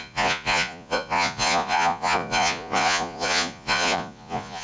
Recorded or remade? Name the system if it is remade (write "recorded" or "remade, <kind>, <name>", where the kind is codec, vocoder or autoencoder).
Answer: remade, vocoder, Vocos